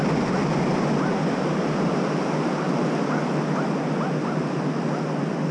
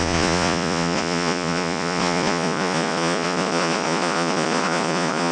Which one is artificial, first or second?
second